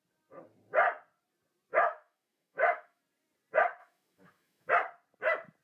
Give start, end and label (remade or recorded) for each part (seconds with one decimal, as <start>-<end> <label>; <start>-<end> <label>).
0.0-1.7 recorded; 1.7-3.0 remade; 3.0-3.8 recorded; 3.8-4.7 remade; 4.7-5.6 recorded